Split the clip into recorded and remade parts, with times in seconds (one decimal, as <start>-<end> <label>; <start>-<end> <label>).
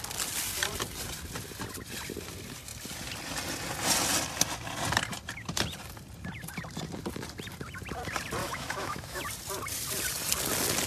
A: 0.0-8.4 recorded; 8.4-9.2 remade; 9.2-10.9 recorded